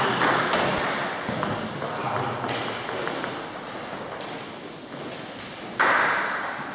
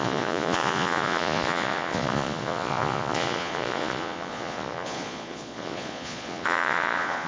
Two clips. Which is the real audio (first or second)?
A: first